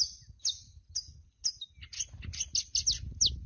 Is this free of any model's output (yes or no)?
yes